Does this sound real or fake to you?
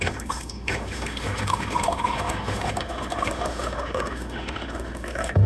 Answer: fake